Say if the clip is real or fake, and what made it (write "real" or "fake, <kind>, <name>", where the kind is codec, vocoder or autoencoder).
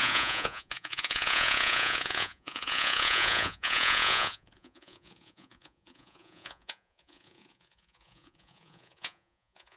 fake, vocoder, Vocos